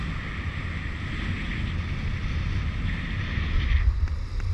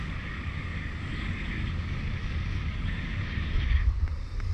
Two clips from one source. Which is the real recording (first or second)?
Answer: first